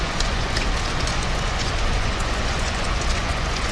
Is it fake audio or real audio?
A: fake